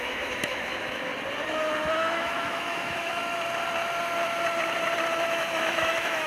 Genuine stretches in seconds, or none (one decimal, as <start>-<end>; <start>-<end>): 1.1-1.9; 3.2-5.3